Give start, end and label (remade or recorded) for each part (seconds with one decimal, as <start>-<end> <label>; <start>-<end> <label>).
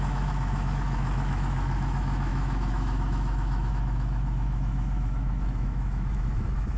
0.0-6.8 remade